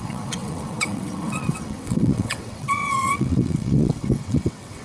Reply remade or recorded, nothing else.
remade